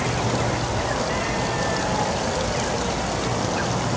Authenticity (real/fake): real